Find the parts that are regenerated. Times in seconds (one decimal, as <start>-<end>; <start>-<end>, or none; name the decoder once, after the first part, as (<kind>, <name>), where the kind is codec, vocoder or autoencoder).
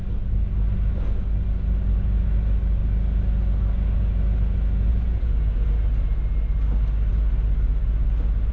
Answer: 4.9-5.7 (vocoder, Vocos)